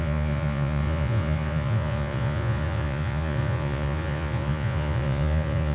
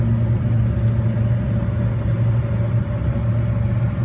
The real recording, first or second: second